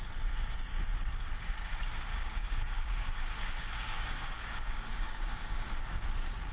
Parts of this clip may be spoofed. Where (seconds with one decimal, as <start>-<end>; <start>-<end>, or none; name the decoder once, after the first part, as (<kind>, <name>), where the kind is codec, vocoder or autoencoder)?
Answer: 2.1-6.0 (codec, DAC)